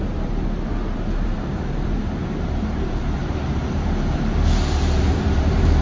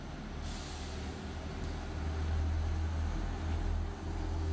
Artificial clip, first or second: first